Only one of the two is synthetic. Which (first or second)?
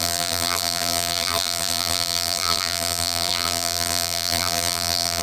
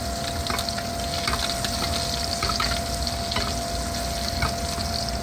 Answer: first